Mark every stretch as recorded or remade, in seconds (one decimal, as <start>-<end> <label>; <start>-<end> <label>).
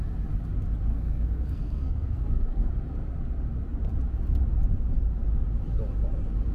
0.0-0.9 recorded; 0.9-2.7 remade; 2.7-6.5 recorded